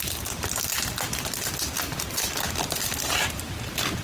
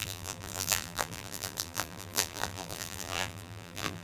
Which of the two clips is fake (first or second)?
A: second